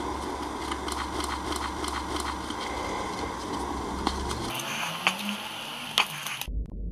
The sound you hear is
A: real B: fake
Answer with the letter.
A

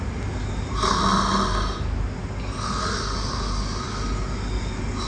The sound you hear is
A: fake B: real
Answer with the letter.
B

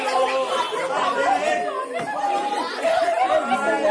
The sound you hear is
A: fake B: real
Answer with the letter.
B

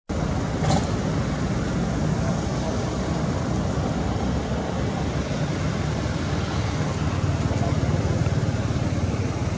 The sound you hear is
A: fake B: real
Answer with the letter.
B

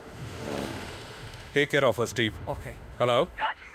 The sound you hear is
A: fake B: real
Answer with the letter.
A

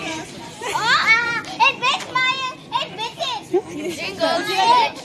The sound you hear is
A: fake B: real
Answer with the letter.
B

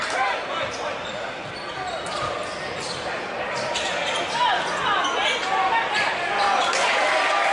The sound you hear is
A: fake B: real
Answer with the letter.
B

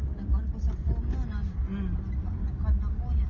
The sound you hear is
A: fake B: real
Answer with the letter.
B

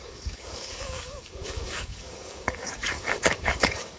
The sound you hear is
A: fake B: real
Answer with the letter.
A